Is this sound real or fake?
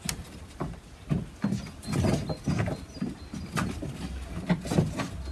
real